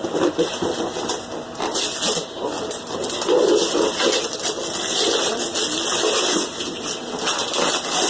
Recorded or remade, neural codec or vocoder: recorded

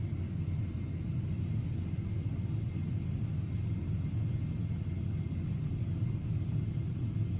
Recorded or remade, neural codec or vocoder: recorded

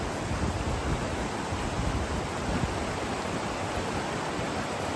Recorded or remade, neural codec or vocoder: recorded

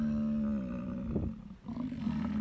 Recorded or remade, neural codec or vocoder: recorded